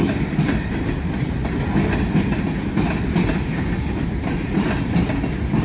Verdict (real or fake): real